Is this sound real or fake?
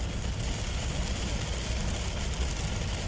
real